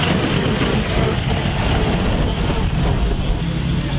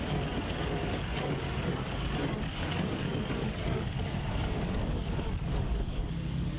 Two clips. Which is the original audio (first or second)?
first